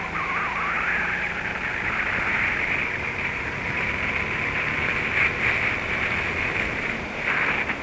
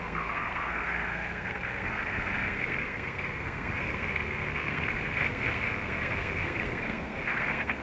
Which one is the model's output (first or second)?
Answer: second